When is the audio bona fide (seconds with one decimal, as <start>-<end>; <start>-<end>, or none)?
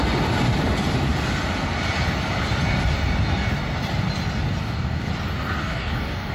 0.0-4.6; 5.1-5.6